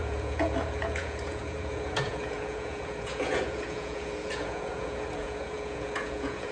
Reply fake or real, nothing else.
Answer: fake